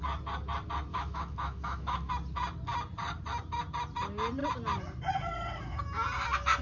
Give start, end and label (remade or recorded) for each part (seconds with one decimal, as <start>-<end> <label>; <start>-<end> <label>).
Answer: 0.0-0.9 recorded; 0.9-2.1 remade; 2.1-6.6 recorded